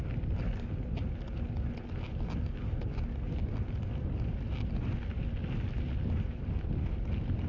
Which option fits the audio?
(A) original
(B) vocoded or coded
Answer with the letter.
A